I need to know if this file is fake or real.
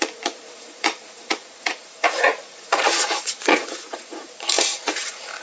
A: fake